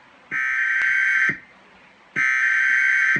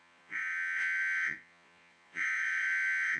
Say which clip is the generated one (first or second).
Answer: second